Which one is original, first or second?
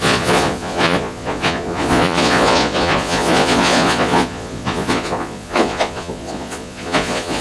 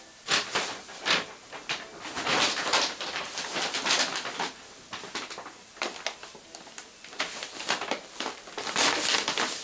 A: second